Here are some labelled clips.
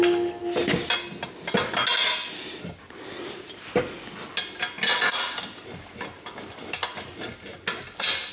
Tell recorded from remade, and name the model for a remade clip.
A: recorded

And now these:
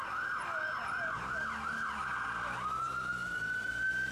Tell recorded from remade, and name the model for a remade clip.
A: recorded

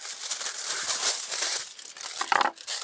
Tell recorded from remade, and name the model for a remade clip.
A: recorded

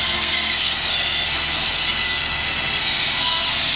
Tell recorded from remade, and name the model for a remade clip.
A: remade, codec, SNAC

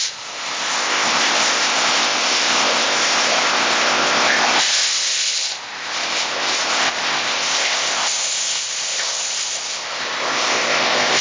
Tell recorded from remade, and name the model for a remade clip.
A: remade, codec, ZipCodec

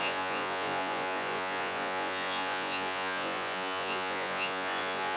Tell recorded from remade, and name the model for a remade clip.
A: remade, vocoder, Vocos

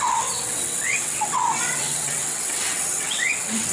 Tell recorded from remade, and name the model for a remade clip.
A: remade, vocoder, WaveNeXt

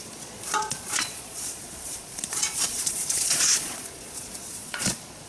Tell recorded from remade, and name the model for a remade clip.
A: remade, vocoder, Vocos